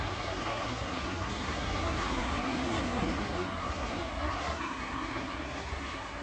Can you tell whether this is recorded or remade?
remade